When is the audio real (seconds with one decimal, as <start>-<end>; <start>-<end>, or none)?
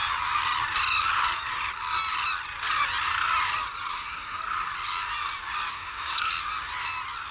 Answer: 0.0-3.9; 4.4-5.7; 6.3-7.3